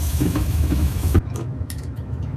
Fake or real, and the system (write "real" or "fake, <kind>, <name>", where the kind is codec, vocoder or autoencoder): fake, autoencoder, DAC-VAE